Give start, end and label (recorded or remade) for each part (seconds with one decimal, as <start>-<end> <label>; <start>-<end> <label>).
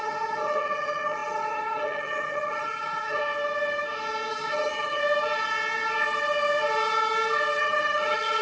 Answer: 0.0-3.2 remade; 3.2-4.3 recorded; 4.3-5.0 remade; 5.0-7.6 recorded; 7.6-8.4 remade